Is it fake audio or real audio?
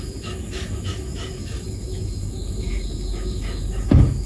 fake